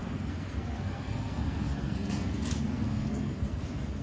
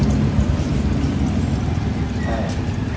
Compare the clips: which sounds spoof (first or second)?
first